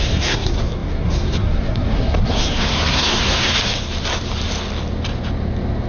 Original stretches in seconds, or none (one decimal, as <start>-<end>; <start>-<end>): 3.5-5.9